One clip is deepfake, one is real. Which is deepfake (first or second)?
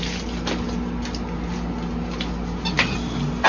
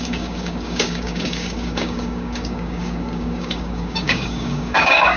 second